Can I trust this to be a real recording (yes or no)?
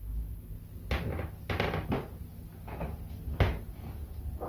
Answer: yes